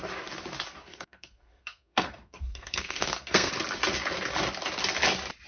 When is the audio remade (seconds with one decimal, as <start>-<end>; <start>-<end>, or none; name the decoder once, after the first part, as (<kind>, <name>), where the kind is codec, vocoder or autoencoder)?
0.9-3.5 (codec, SNAC)